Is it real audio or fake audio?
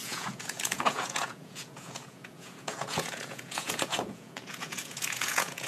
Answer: fake